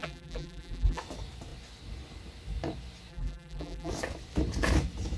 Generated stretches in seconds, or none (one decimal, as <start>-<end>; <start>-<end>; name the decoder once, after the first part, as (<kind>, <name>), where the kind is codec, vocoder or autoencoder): 0.0-1.0 (vocoder, BigVGAN v2); 3.1-3.9